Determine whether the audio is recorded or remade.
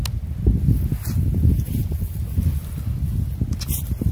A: recorded